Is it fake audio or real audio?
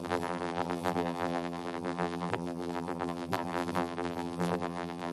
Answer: fake